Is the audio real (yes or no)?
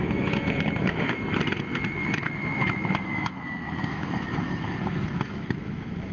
no